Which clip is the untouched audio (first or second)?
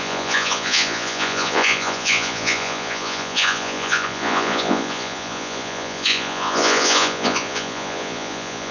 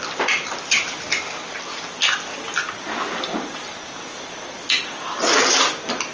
second